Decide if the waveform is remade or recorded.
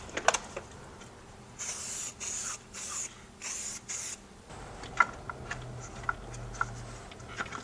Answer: recorded